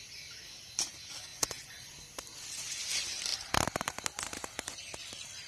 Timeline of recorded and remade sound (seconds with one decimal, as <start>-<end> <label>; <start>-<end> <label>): 0.0-1.3 recorded; 1.3-1.9 remade; 1.9-5.5 recorded